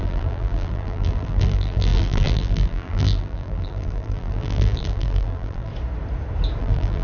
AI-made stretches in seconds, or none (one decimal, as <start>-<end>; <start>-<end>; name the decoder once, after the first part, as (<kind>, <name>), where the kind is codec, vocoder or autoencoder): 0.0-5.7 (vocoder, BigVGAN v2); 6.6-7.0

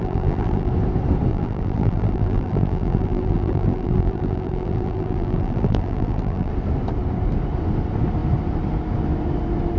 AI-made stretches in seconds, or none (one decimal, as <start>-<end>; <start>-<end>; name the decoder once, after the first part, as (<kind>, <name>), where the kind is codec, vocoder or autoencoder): 0.0-0.7 (vocoder, BigVGAN v2); 1.3-6.5

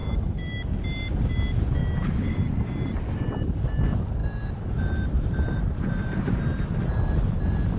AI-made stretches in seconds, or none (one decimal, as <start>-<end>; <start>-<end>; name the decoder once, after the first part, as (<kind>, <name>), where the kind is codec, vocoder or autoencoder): 4.2-6.4 (vocoder, BigVGAN v2)

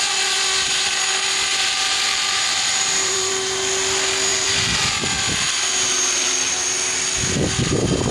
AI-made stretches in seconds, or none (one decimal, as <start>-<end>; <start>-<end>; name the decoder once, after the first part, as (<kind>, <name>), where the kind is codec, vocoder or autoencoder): 1.5-3.3 (vocoder, BigVGAN v2); 4.3-4.9

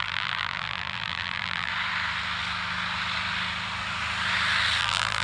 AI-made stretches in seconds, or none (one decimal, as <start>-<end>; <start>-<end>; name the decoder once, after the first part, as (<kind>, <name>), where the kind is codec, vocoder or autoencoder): 0.0-1.7 (vocoder, BigVGAN v2); 4.8-5.2